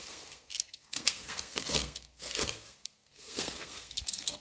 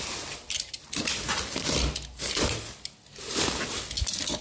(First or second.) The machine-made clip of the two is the first